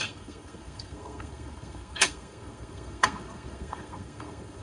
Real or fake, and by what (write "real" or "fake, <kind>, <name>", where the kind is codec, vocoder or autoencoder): fake, codec, SNAC